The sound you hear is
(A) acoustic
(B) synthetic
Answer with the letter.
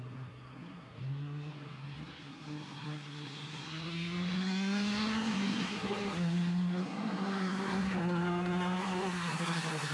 B